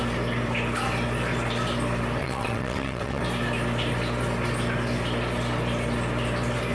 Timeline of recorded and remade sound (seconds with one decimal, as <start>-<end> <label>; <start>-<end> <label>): 0.0-2.2 recorded; 2.2-3.2 remade; 3.2-6.7 recorded